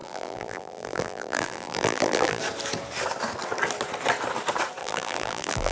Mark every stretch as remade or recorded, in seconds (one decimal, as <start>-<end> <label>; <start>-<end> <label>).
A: 0.0-2.4 remade; 2.4-4.8 recorded; 4.8-5.7 remade